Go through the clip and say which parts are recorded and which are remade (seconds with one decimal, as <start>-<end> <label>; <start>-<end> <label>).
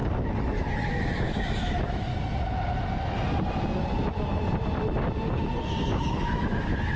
0.0-0.9 recorded; 0.9-2.1 remade; 2.1-5.6 recorded; 5.6-7.0 remade